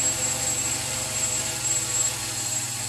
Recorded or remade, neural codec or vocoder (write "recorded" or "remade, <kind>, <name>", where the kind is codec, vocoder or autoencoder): remade, vocoder, BigVGAN v2